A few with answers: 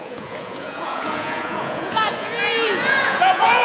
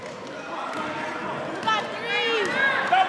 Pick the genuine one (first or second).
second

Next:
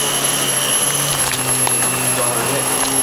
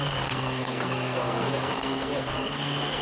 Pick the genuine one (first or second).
first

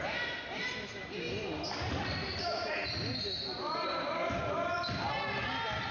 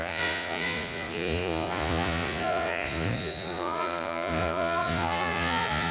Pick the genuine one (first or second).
first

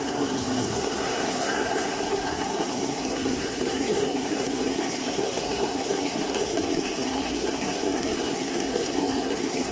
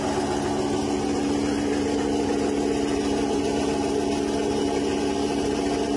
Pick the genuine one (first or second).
second